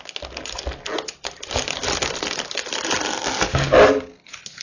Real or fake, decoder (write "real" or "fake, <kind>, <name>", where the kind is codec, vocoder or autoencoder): real